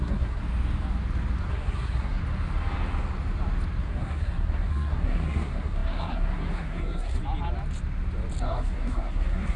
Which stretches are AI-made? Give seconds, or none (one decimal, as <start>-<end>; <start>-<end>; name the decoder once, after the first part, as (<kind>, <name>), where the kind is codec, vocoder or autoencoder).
0.0-0.4 (codec, SNAC); 1.5-2.2; 3.8-7.2; 8.4-9.6